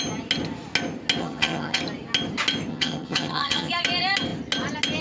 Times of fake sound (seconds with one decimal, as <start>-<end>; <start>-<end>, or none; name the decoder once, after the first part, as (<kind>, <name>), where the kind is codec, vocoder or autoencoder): 1.2-1.8 (vocoder, HiFi-GAN); 2.7-3.7